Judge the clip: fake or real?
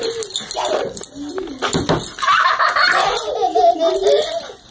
real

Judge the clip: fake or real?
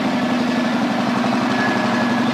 real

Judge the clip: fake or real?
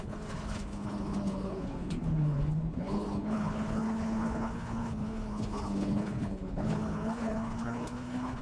fake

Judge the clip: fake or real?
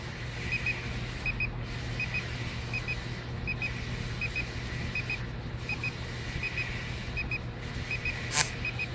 real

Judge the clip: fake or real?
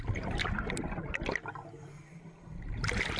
real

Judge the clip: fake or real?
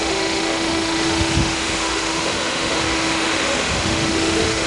fake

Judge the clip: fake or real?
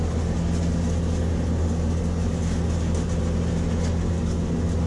real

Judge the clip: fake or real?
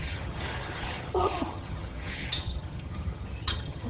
fake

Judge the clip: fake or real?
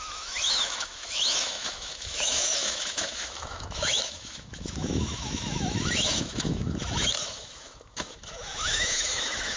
fake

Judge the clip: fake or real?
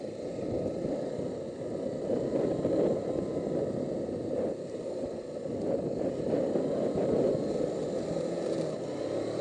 real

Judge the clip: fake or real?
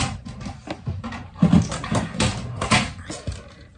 real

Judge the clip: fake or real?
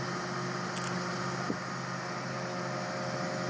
real